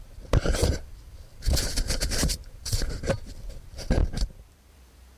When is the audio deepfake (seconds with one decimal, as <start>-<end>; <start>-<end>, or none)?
1.3-3.3